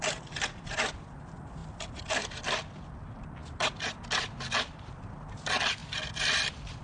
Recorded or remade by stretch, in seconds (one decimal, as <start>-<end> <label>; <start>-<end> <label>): 0.0-6.8 recorded